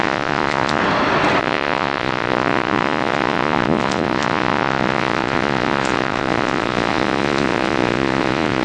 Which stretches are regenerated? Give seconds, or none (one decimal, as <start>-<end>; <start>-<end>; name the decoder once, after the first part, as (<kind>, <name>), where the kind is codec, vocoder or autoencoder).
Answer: 0.0-0.8 (vocoder, Vocos); 1.4-8.6